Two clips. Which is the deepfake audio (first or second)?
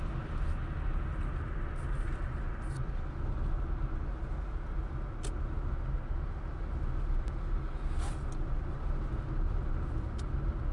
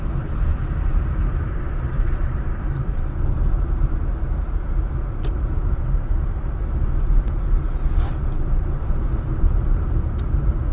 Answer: second